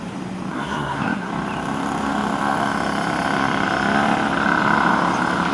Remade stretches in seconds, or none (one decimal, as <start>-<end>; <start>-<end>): 0.5-1.3